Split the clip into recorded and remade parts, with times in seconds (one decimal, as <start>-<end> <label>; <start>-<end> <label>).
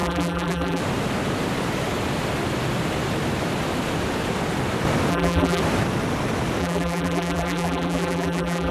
0.0-0.8 remade; 0.8-5.1 recorded; 5.1-5.6 remade; 5.6-6.6 recorded; 6.6-8.7 remade